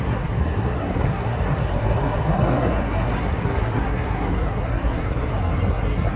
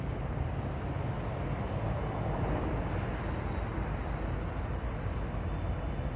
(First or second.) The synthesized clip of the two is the first